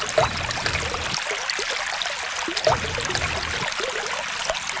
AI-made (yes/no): no